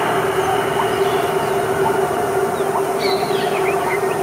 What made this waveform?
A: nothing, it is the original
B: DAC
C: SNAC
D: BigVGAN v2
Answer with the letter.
A